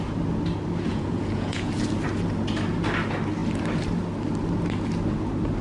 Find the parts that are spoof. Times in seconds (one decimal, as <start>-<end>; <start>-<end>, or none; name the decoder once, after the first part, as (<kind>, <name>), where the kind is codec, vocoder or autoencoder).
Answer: 0.9-1.7 (vocoder, Vocos)